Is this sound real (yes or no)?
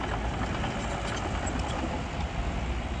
yes